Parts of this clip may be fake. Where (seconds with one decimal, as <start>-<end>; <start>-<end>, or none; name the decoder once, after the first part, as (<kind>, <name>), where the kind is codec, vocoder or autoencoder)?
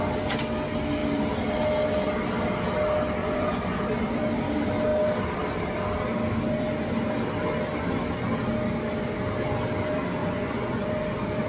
3.2-3.8 (vocoder, Vocos); 10.2-10.8